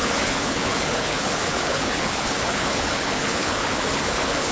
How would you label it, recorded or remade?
remade